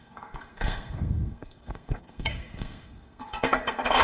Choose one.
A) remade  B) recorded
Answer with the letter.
A